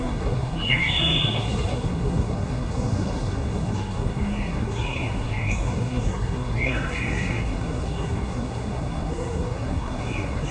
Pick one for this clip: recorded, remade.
remade